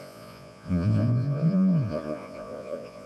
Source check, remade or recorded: remade